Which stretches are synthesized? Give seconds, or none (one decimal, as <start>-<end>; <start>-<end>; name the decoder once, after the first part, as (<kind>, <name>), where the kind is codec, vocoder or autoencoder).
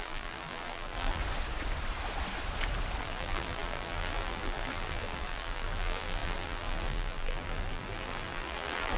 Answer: 0.0-1.2 (vocoder, BigVGAN v2); 3.0-9.0